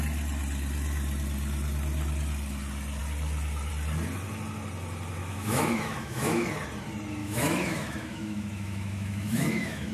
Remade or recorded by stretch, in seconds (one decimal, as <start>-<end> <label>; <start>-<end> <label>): 0.0-5.2 recorded; 5.2-6.5 remade; 6.5-7.2 recorded; 7.2-9.9 remade